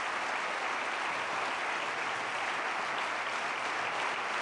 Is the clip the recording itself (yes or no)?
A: yes